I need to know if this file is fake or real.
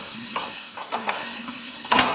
fake